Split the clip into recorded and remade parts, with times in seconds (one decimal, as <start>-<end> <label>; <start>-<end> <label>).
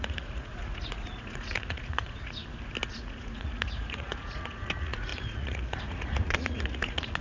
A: 0.0-2.4 remade; 2.4-2.9 recorded; 2.9-7.2 remade